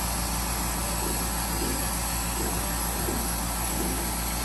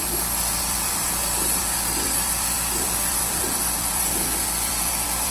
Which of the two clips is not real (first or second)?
second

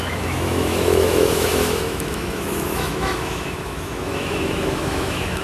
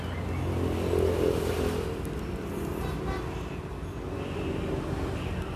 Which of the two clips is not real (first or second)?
first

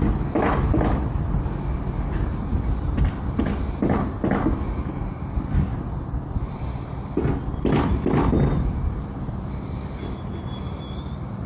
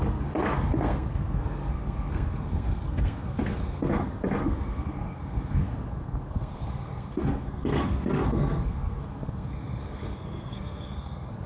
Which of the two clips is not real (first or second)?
second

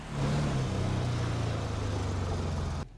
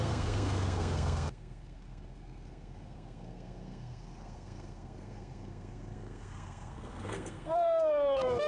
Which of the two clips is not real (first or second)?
second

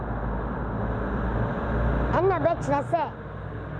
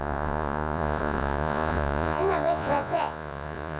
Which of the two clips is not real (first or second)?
second